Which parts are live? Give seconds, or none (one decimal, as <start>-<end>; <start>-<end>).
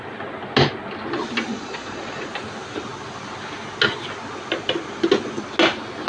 0.0-1.5; 2.3-6.1